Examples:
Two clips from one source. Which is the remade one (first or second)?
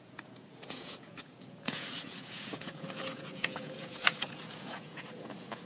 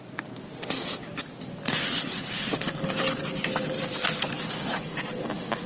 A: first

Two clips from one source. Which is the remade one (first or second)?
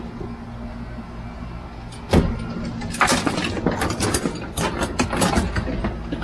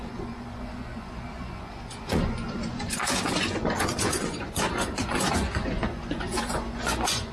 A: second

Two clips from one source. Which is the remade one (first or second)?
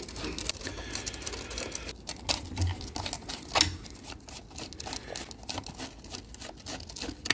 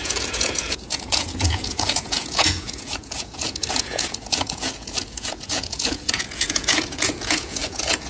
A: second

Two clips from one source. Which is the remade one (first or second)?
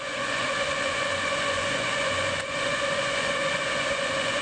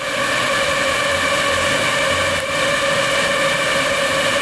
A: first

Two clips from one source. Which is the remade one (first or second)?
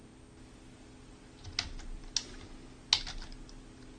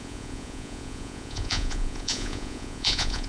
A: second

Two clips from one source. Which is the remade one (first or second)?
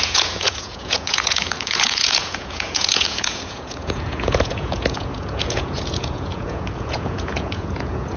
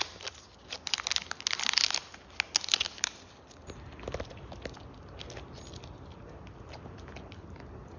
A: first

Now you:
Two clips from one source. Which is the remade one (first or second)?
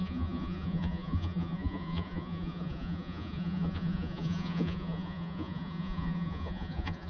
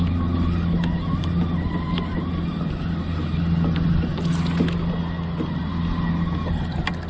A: first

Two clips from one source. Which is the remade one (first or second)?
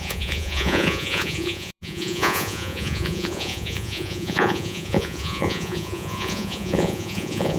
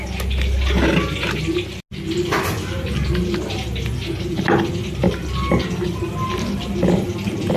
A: first